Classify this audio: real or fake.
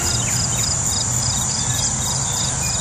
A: real